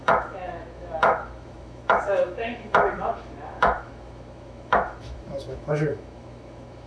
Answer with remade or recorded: remade